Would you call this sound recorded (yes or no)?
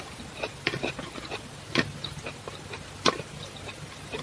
yes